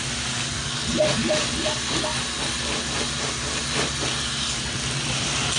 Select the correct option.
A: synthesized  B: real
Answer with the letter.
B